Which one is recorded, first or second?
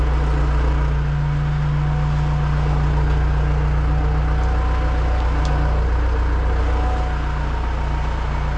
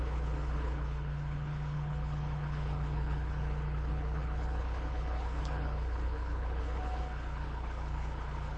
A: first